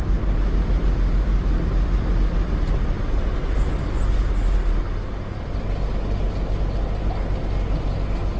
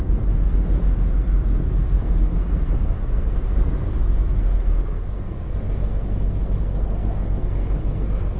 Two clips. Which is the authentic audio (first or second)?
first